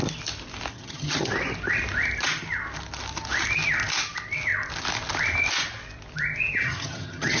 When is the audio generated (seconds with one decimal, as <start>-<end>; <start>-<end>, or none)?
0.7-1.3; 6.6-7.4